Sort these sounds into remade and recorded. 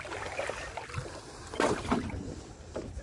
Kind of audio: recorded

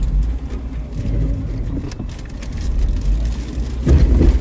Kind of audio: recorded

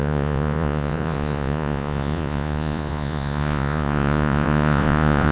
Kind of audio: remade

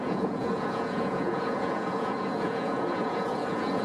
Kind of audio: remade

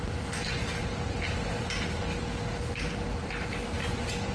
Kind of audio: recorded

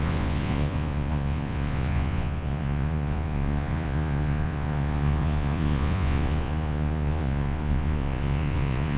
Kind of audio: remade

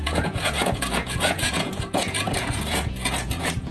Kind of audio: remade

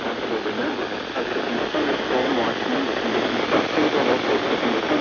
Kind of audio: recorded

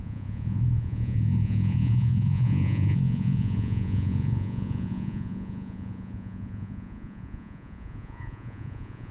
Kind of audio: remade